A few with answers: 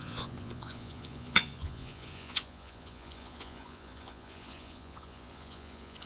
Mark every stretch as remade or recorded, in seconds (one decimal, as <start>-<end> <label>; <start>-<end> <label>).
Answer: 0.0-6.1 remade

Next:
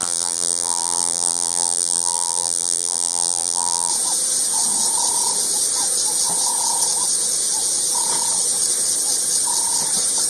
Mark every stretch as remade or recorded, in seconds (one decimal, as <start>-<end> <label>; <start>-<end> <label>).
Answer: 0.0-3.9 remade; 3.9-10.3 recorded

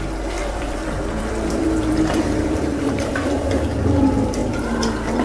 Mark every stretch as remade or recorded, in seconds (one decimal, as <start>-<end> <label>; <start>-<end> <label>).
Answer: 0.0-0.4 recorded; 0.4-3.5 remade; 3.5-5.2 recorded

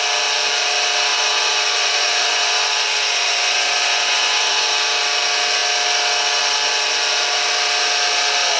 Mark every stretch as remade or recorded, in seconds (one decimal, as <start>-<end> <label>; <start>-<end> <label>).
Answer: 0.0-1.1 recorded; 1.1-4.6 remade; 4.6-8.6 recorded

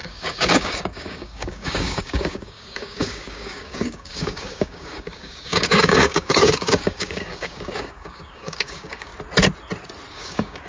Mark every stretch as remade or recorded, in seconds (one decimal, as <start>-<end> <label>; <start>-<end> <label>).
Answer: 0.0-9.1 remade; 9.1-10.1 recorded; 10.1-10.7 remade

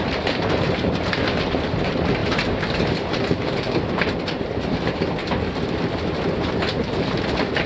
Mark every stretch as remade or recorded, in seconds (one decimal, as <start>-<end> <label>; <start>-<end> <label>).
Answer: 0.0-5.2 remade; 5.2-6.0 recorded; 6.0-7.7 remade